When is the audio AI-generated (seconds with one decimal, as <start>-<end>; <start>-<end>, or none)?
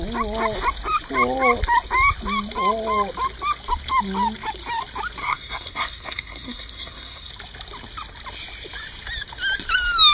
5.2-7.3